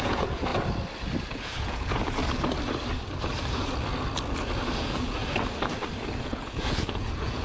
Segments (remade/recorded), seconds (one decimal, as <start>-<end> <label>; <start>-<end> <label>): 0.0-0.5 remade; 0.5-1.3 recorded; 1.3-2.2 remade; 2.2-4.8 recorded; 4.8-5.2 remade; 5.2-6.2 recorded; 6.2-7.4 remade